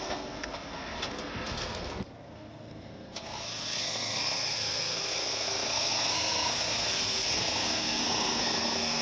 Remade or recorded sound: remade